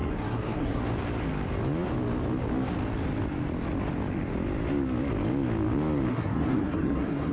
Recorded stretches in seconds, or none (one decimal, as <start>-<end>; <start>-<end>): 0.8-6.1